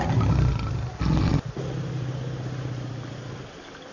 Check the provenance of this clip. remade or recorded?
recorded